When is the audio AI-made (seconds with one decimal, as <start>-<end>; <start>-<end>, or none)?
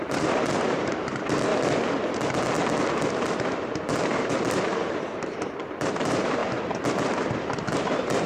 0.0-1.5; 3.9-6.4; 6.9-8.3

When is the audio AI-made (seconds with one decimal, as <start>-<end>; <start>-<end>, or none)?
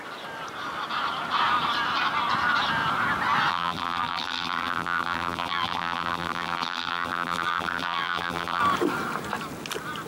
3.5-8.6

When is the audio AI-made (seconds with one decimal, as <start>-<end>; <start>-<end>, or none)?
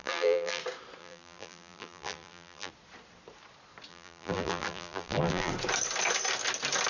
0.0-0.6; 1.0-2.7; 3.9-5.5